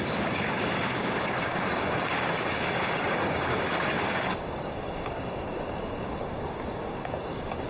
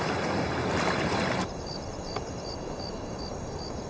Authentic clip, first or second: second